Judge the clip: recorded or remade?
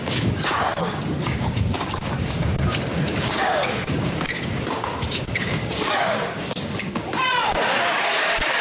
remade